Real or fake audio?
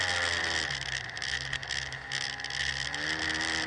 real